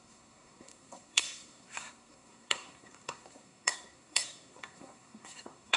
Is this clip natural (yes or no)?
no